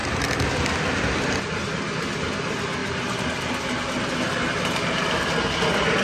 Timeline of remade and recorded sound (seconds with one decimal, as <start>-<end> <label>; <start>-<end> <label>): 0.0-6.0 recorded